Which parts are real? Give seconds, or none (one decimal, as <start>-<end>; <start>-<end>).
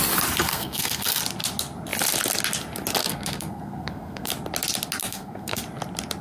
0.0-0.5; 1.2-3.0; 4.3-5.0; 5.6-6.2